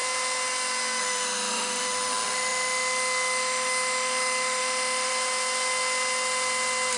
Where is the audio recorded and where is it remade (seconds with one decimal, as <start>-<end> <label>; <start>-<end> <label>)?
0.0-1.0 recorded; 1.0-5.1 remade; 5.1-7.0 recorded